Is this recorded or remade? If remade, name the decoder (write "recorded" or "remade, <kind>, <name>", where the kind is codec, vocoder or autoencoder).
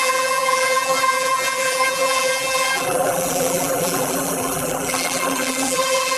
remade, vocoder, BigVGAN v2